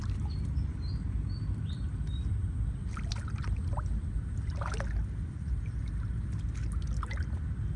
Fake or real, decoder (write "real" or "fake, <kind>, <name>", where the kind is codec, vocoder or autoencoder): real